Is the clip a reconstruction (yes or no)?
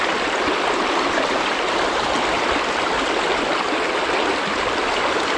no